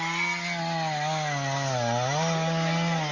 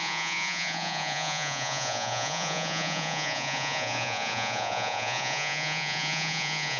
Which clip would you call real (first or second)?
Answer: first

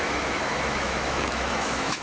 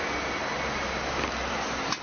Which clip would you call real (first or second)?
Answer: second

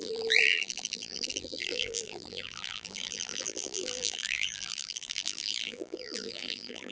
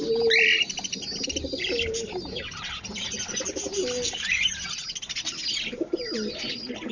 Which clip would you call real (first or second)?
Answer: second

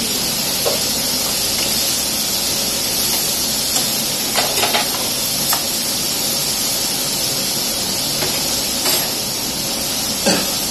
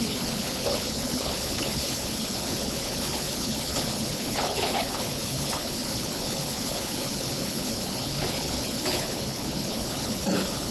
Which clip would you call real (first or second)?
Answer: first